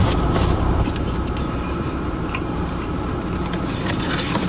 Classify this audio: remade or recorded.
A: remade